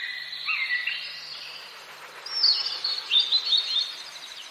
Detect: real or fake real